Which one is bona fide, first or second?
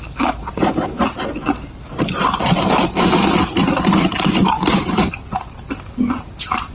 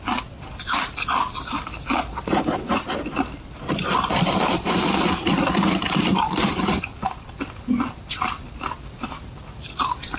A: first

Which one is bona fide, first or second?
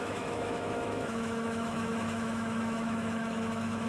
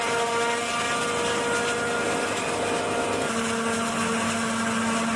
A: second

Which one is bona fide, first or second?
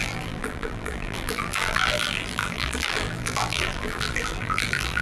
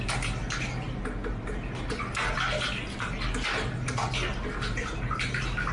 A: second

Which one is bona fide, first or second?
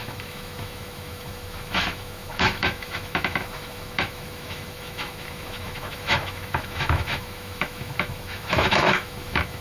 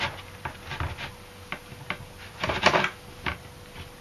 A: second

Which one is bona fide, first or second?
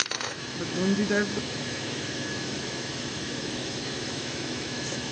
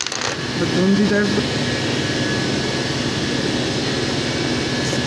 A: second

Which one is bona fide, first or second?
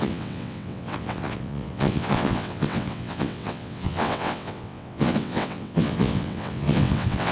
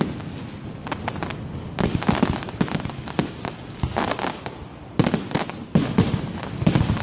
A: second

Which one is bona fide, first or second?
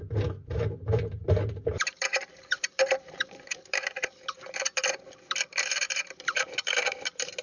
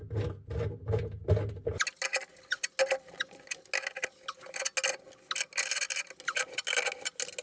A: second